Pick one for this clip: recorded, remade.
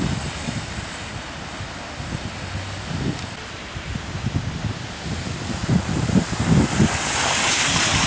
recorded